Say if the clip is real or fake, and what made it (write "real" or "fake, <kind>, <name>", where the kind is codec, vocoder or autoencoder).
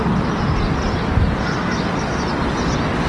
real